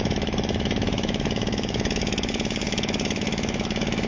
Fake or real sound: fake